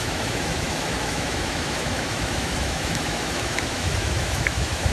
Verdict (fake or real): fake